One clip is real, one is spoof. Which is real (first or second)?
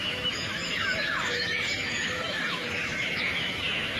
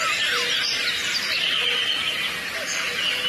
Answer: second